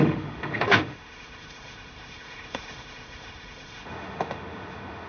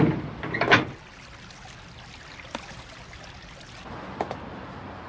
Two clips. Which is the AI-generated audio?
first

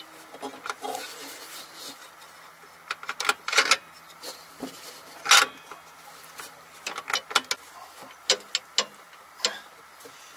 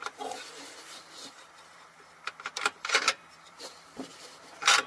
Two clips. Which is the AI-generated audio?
second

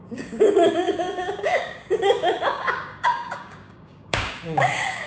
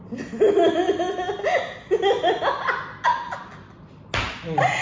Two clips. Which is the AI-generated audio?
first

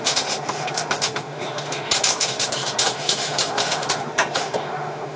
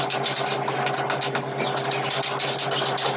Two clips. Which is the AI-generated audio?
first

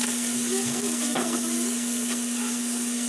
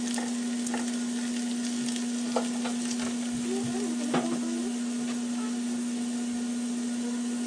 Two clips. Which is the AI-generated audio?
first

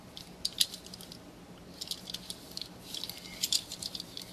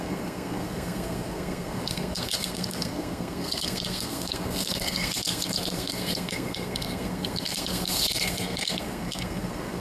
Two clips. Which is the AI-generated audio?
second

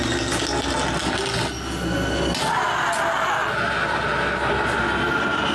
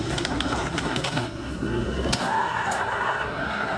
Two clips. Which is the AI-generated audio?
second